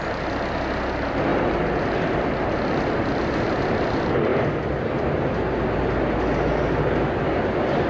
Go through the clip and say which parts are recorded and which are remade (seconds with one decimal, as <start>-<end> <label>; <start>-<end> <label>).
0.0-7.9 recorded